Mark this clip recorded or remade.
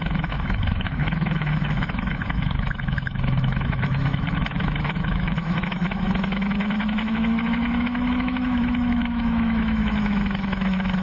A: remade